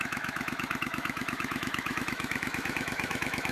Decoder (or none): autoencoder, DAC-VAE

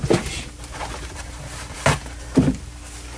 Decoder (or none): none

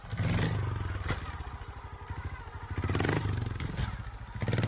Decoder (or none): none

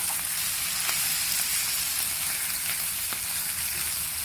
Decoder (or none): none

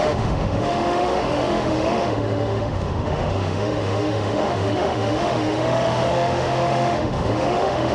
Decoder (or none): autoencoder, DAC-VAE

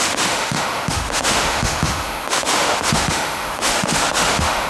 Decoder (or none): autoencoder, DAC-VAE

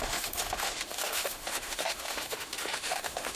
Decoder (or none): autoencoder, DAC-VAE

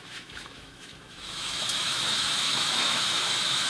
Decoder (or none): autoencoder, DAC-VAE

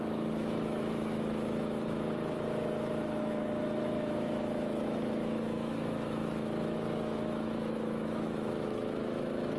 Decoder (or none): autoencoder, DAC-VAE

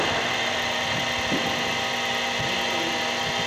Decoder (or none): none